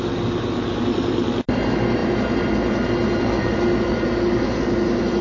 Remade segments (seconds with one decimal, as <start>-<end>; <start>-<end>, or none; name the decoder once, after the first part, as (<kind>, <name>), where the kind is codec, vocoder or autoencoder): none